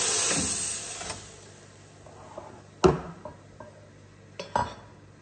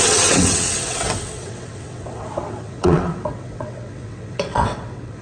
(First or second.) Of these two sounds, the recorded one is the first